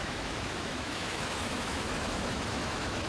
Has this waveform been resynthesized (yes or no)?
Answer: yes